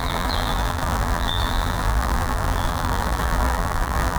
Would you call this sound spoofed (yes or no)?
yes